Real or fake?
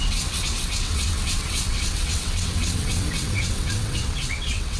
fake